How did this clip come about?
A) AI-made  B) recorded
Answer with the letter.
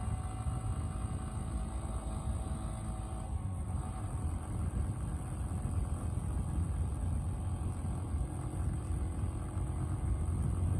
B